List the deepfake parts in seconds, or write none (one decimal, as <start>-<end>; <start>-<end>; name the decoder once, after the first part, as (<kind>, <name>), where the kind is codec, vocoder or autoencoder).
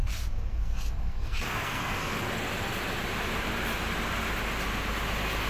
0.0-2.3 (codec, SNAC)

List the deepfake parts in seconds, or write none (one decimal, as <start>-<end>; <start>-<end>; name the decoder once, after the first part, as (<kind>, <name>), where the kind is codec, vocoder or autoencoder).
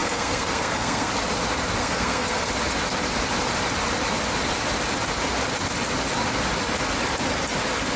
0.0-1.1 (codec, SNAC); 1.8-2.5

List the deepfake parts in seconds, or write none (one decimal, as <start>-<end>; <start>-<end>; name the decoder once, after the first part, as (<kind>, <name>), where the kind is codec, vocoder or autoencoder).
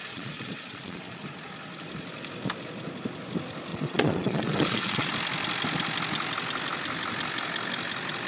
0.0-1.2 (vocoder, Vocos); 3.7-5.1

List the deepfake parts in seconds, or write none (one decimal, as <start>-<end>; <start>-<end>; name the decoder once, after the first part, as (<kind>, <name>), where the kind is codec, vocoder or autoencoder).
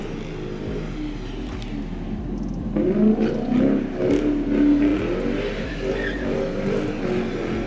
none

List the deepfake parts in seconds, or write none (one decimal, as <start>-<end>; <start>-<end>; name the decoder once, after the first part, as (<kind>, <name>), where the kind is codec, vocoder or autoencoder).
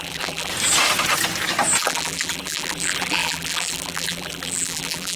0.0-0.5 (vocoder, BigVGAN v2); 1.8-5.2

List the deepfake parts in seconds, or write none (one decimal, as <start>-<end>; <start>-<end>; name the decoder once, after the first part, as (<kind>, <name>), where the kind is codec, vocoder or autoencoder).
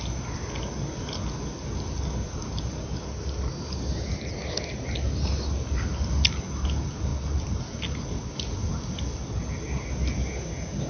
none